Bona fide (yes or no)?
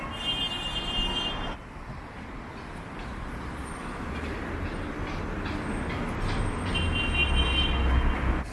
yes